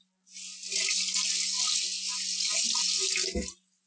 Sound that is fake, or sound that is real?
real